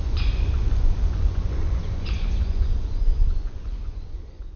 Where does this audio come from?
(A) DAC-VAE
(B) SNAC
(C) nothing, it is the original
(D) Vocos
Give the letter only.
D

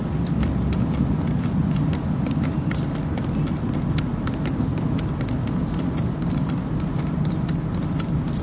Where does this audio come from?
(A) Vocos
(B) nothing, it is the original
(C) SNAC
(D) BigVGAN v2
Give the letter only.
B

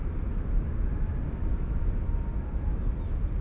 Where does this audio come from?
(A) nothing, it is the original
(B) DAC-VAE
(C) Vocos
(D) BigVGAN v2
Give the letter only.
A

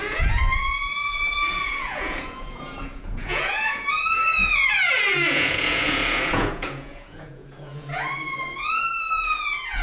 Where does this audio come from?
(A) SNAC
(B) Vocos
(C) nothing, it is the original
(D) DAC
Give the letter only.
B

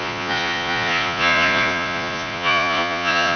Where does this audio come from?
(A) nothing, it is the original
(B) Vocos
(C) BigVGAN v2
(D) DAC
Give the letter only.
B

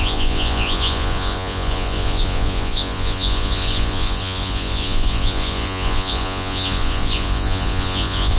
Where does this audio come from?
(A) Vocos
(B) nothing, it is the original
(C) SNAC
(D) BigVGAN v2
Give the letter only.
A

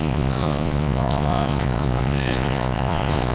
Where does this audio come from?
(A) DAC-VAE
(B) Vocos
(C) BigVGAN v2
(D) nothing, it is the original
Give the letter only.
B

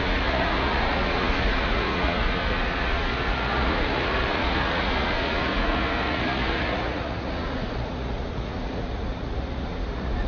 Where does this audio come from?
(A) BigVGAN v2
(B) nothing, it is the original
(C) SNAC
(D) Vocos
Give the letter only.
D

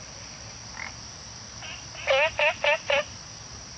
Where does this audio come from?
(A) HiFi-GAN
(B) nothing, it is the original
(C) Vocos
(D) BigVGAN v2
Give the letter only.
B